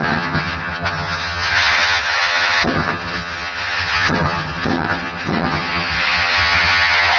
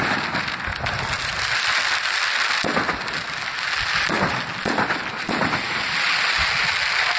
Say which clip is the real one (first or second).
second